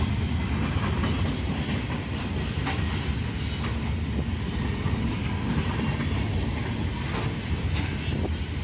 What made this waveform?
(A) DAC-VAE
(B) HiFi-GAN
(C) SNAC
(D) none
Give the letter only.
D